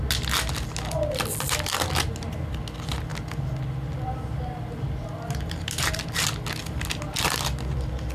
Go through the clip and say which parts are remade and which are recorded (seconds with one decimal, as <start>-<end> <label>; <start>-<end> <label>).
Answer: 0.0-8.1 recorded